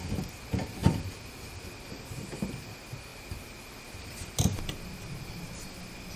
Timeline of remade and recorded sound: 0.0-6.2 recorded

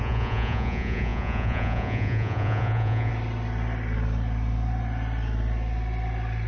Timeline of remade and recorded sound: 0.0-3.1 remade; 3.1-6.5 recorded

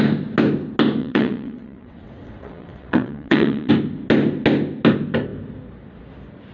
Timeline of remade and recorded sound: 0.0-1.0 recorded; 1.0-3.7 remade; 3.7-6.5 recorded

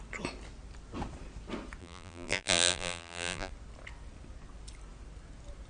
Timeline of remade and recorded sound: 0.0-1.8 recorded; 1.8-3.5 remade; 3.5-5.7 recorded

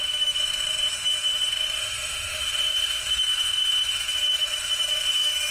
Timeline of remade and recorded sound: 0.0-5.5 remade

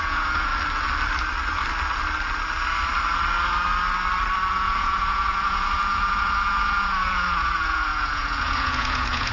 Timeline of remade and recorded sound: 0.0-0.5 remade; 0.5-4.5 recorded; 4.5-9.3 remade

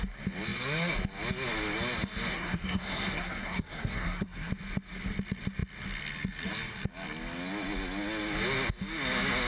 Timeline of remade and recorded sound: 0.0-2.3 recorded; 2.3-4.5 remade; 4.5-9.5 recorded